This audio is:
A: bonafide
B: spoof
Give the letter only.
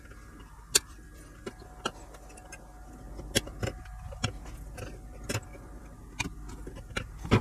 A